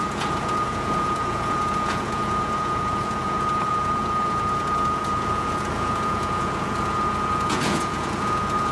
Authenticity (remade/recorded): remade